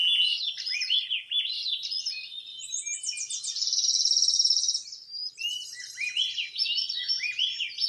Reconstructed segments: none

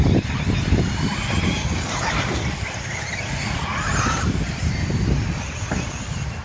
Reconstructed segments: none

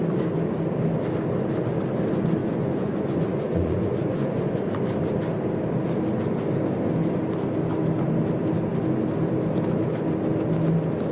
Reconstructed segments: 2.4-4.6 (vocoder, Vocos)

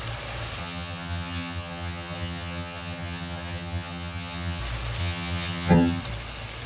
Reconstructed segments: 0.6-4.6 (vocoder, HiFi-GAN); 5.0-6.0